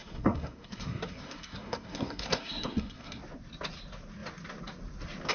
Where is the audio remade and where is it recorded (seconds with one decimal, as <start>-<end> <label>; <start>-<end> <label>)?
0.0-3.2 remade; 3.2-5.3 recorded